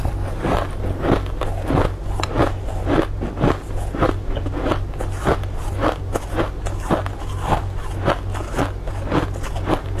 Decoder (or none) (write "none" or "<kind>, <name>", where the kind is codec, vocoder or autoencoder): none